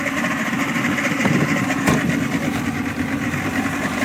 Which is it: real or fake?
fake